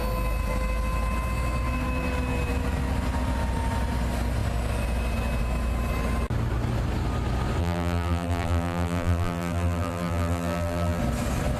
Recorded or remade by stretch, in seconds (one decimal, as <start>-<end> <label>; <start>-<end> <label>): 0.0-7.6 recorded; 7.6-11.0 remade; 11.0-11.6 recorded